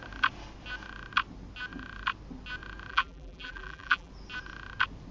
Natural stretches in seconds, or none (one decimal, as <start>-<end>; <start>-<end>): 0.0-2.9; 4.1-5.1